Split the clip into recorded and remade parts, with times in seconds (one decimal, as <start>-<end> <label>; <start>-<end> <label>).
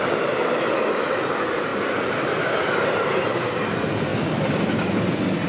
0.0-5.5 recorded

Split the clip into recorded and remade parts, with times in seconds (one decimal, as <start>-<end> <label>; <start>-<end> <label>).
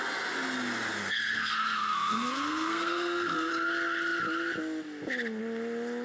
0.0-1.0 recorded; 1.0-3.5 remade; 3.5-6.0 recorded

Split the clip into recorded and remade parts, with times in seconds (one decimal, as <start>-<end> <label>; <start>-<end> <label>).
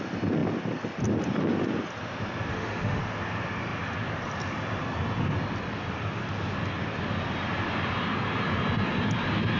0.0-2.5 recorded; 2.5-3.0 remade; 3.0-9.6 recorded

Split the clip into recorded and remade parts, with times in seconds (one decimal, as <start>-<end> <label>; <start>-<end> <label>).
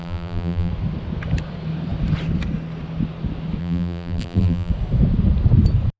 0.0-0.7 remade; 0.7-3.6 recorded; 3.6-4.7 remade; 4.7-6.0 recorded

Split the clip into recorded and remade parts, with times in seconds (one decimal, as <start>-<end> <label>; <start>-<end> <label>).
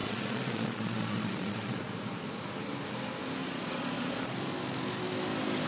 0.0-1.8 remade; 1.8-3.4 recorded; 3.4-4.4 remade; 4.4-5.7 recorded